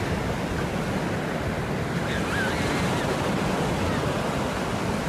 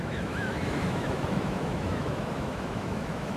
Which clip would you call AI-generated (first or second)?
second